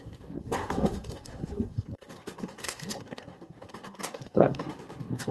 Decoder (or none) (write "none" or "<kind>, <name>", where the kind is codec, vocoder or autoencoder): codec, SNAC